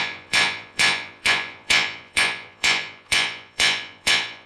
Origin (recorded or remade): remade